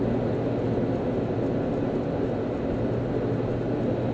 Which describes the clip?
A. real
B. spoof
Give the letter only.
A